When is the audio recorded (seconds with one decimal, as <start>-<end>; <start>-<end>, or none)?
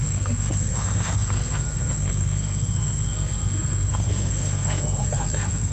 none